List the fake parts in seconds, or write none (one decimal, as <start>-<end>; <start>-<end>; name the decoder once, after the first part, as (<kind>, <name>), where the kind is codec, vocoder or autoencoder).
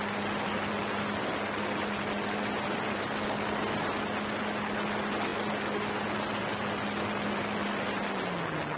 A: none